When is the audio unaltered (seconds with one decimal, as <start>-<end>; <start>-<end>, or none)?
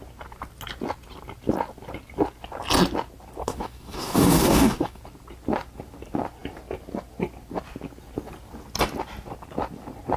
0.0-3.4; 5.0-10.2